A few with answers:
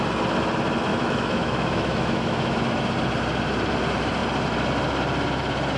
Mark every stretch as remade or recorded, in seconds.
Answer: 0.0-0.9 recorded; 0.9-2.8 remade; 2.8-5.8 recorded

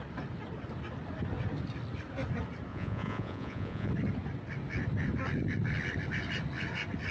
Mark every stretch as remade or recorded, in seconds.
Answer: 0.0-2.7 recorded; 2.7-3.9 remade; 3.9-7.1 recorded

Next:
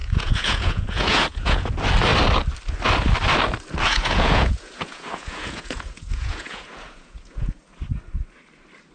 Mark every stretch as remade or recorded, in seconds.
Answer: 0.0-1.7 remade; 1.7-3.9 recorded; 3.9-7.6 remade; 7.6-8.9 recorded

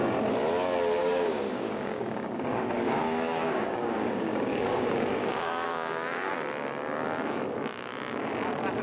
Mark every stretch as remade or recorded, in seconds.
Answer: 0.0-1.0 recorded; 1.0-6.3 remade; 6.3-8.8 recorded

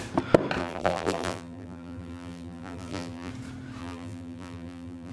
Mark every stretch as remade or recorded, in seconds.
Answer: 0.0-0.6 recorded; 0.6-3.3 remade; 3.3-3.8 recorded; 3.8-5.1 remade

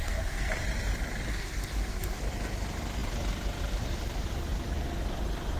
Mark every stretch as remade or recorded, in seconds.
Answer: 0.0-0.5 remade; 0.5-1.3 recorded; 1.3-2.2 remade; 2.2-5.6 recorded